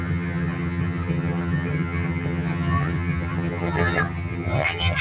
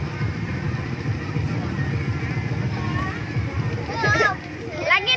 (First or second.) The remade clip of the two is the first